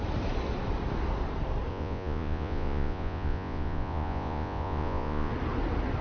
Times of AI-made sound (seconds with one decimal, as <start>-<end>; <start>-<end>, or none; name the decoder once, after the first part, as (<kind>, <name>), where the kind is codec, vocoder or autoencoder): 1.7-5.3 (vocoder, Vocos)